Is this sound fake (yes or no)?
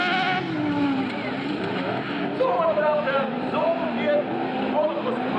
no